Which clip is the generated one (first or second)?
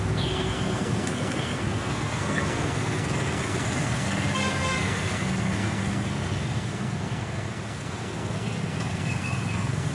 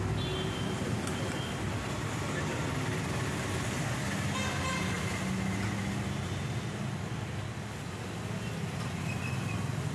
first